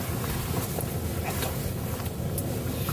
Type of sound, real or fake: real